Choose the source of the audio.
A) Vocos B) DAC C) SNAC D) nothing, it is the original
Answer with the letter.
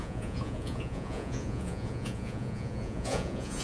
A